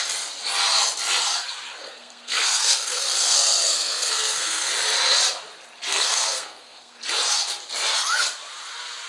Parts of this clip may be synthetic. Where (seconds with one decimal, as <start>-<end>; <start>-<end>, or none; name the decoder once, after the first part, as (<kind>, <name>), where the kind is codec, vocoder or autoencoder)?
1.8-4.7 (codec, SNAC); 5.9-7.0